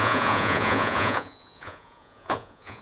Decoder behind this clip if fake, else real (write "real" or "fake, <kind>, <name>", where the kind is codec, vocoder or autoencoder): fake, vocoder, Vocos